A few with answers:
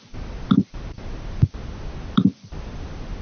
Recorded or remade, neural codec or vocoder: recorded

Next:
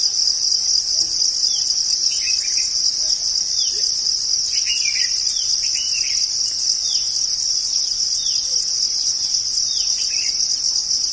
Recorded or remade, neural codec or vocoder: recorded